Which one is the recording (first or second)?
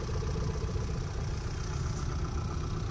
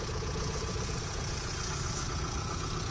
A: first